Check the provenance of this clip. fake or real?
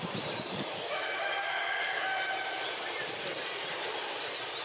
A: real